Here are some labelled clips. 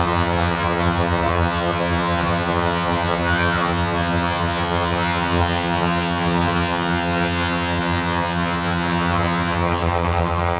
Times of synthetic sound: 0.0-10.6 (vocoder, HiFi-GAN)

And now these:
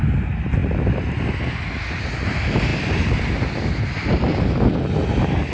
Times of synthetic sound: none

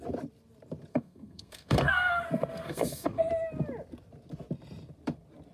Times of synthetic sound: 0.9-3.3 (codec, SNAC)

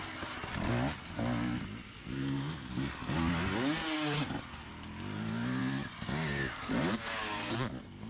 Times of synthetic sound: 2.0-2.7 (codec, SNAC)

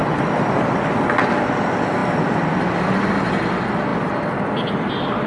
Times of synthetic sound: none

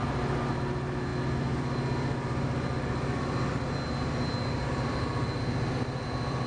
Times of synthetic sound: none